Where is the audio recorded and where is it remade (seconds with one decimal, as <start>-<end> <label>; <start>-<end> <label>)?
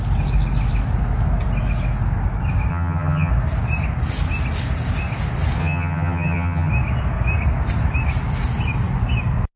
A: 0.0-2.7 recorded; 2.7-3.3 remade; 3.3-5.6 recorded; 5.6-6.7 remade; 6.7-9.6 recorded